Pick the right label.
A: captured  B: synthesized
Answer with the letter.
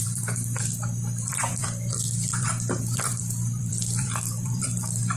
B